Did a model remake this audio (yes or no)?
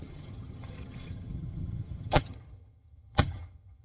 yes